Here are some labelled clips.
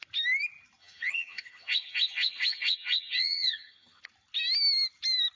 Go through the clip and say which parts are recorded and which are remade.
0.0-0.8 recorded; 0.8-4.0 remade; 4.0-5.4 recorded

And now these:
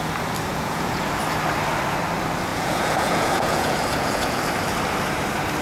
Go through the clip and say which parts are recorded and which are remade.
0.0-0.5 recorded; 0.5-1.2 remade; 1.2-2.5 recorded; 2.5-4.4 remade; 4.4-5.6 recorded

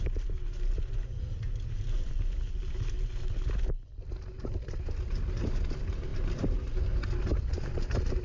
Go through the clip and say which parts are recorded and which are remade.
0.0-8.2 recorded

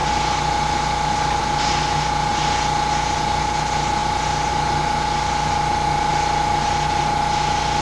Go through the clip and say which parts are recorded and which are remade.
0.0-7.8 recorded

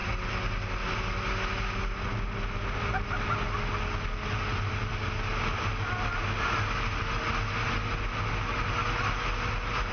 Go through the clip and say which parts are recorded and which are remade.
0.0-9.9 recorded

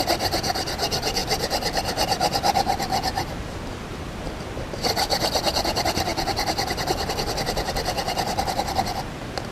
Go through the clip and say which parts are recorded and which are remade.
0.0-1.2 recorded; 1.2-1.9 remade; 1.9-9.5 recorded